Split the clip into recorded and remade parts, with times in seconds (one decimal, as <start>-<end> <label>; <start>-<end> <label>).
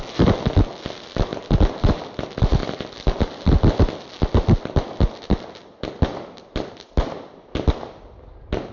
0.0-8.7 recorded